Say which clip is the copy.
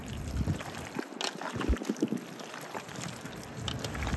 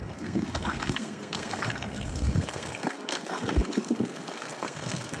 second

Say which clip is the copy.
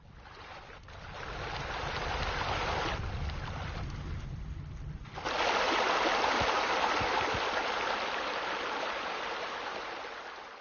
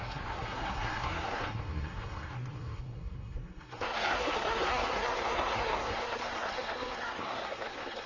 second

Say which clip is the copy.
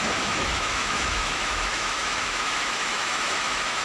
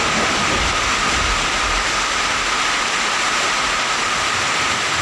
first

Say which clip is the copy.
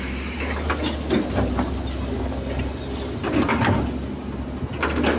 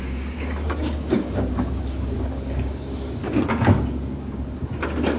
second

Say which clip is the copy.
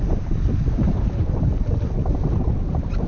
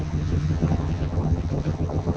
second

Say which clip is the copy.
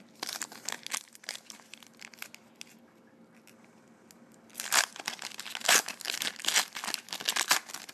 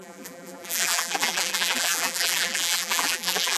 second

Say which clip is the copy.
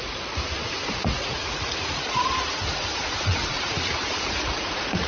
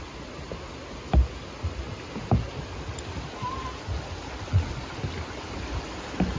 first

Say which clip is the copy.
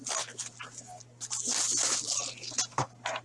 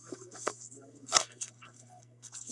second